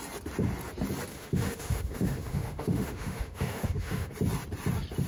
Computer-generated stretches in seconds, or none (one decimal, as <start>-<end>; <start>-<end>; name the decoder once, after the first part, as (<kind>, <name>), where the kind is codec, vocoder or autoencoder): 1.1-4.1 (autoencoder, DAC-VAE)